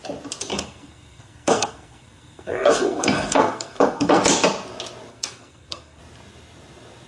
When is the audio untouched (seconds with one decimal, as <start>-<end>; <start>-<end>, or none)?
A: 0.0-0.5; 4.2-5.1; 6.0-7.1